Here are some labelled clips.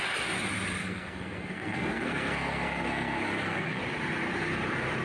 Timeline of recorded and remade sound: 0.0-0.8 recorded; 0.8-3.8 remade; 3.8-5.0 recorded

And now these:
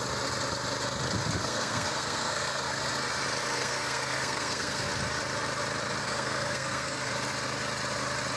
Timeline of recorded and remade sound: 0.0-1.4 recorded; 1.4-2.8 remade; 2.8-3.4 recorded; 3.4-4.9 remade; 4.9-6.0 recorded; 6.0-7.1 remade; 7.1-8.4 recorded

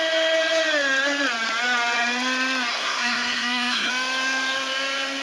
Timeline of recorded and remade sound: 0.0-2.7 recorded; 2.7-3.9 remade; 3.9-5.2 recorded

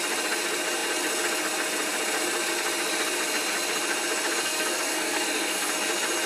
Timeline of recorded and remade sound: 0.0-4.4 recorded; 4.4-5.7 remade; 5.7-6.3 recorded

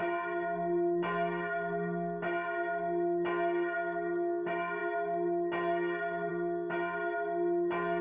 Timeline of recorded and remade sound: 0.0-8.0 recorded

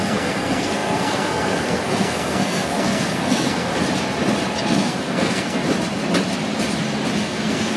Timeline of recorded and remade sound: 0.0-3.7 remade; 3.7-4.6 recorded; 4.6-5.6 remade; 5.6-7.2 recorded; 7.2-7.8 remade